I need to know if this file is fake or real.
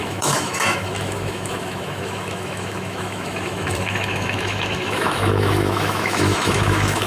fake